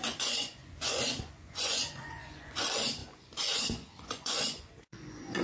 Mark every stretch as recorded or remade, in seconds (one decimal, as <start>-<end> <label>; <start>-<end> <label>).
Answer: 0.0-5.4 remade

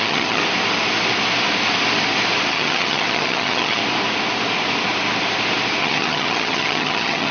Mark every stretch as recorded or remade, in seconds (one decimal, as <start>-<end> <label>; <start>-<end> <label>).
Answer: 0.0-0.4 remade; 0.4-2.5 recorded; 2.5-3.8 remade; 3.8-5.8 recorded; 5.8-7.3 remade

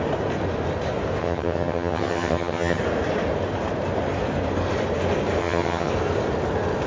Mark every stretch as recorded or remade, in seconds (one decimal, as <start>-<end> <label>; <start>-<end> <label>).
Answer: 0.0-1.2 recorded; 1.2-2.8 remade; 2.8-5.4 recorded; 5.4-5.9 remade; 5.9-6.9 recorded

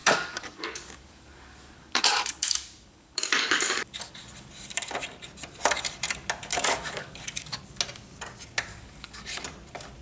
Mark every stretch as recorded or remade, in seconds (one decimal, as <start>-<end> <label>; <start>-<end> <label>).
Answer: 0.0-4.0 remade; 4.0-6.5 recorded; 6.5-7.6 remade; 7.6-8.7 recorded; 8.7-9.4 remade; 9.4-10.0 recorded